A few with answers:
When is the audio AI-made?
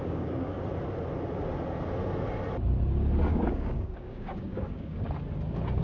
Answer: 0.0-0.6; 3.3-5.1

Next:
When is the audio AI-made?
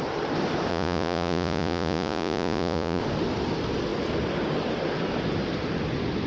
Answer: 0.7-3.0